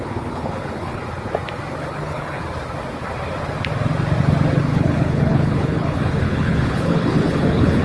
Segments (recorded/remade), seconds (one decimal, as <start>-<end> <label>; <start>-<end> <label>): 0.0-1.0 remade; 1.0-1.8 recorded; 1.8-2.4 remade; 2.4-4.6 recorded; 4.6-7.8 remade